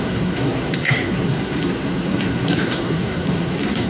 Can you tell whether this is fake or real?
fake